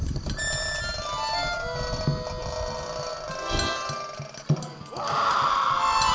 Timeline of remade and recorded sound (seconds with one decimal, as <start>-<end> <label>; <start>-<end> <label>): 0.0-6.1 recorded